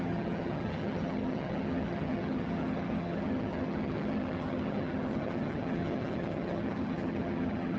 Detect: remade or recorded remade